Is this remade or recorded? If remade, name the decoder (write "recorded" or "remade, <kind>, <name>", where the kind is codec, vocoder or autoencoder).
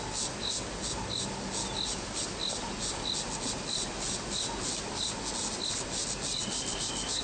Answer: recorded